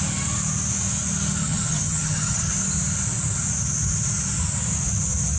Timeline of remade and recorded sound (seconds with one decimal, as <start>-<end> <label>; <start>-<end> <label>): 0.0-1.4 recorded; 1.4-2.5 remade; 2.5-5.4 recorded

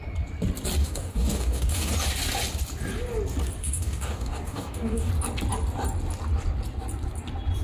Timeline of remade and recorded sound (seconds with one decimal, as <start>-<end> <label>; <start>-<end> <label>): 0.0-0.8 recorded; 0.8-1.9 remade; 1.9-3.6 recorded; 3.6-5.1 remade; 5.1-7.6 recorded

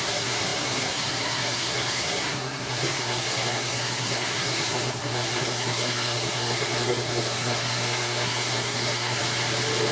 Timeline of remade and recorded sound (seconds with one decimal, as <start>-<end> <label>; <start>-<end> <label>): 0.0-9.2 remade; 9.2-9.9 recorded

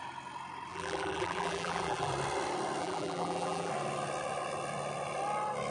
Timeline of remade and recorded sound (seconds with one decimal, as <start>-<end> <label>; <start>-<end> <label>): 0.0-0.7 recorded; 0.7-2.1 remade; 2.1-2.8 recorded; 2.8-3.7 remade; 3.7-5.7 recorded

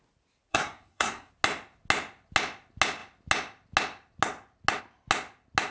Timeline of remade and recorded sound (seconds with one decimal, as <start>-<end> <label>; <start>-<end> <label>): 0.0-0.5 recorded; 0.5-1.3 remade; 1.3-5.7 recorded

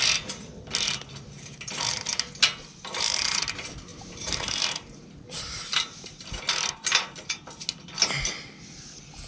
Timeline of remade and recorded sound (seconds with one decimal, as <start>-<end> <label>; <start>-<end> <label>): 0.0-3.9 recorded; 3.9-7.0 remade; 7.0-9.3 recorded